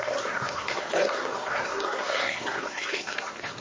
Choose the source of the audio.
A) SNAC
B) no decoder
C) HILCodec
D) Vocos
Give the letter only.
A